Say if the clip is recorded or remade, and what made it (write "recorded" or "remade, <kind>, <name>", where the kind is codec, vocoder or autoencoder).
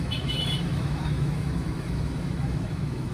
remade, autoencoder, DAC-VAE